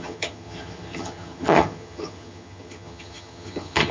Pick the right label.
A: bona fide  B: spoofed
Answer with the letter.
B